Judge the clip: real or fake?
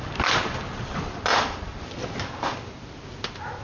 real